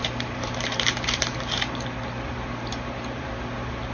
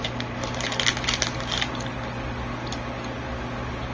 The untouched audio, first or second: second